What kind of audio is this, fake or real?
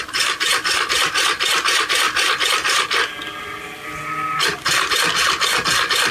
real